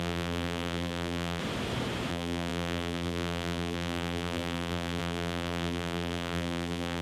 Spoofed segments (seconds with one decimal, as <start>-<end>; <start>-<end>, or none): 0.0-1.4; 2.1-7.0